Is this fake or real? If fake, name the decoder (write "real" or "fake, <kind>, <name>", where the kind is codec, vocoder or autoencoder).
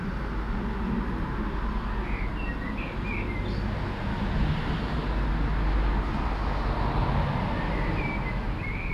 real